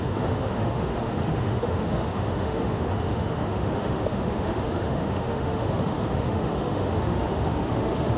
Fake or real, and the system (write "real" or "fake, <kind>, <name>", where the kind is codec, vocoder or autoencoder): fake, autoencoder, DAC-VAE